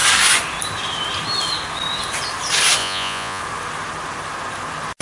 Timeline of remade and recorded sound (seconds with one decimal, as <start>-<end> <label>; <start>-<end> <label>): 0.0-2.8 recorded; 2.8-3.4 remade; 3.4-5.0 recorded